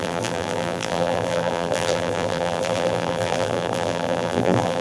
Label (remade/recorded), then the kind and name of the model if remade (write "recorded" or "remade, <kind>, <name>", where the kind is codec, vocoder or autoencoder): remade, vocoder, BigVGAN v2